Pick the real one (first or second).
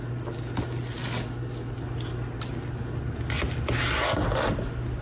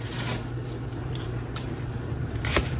first